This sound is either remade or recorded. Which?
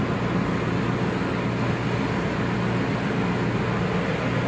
recorded